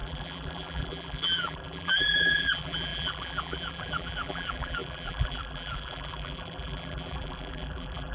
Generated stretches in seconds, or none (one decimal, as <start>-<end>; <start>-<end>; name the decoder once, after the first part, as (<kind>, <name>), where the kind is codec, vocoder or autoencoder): 0.0-8.1 (vocoder, BigVGAN v2)